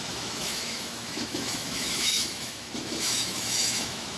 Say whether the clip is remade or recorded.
remade